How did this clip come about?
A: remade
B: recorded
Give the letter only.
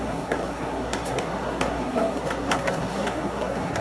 A